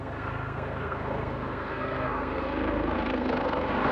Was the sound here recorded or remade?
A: remade